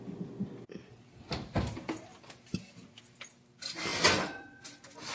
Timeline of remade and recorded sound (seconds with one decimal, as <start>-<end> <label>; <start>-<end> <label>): 0.0-5.1 recorded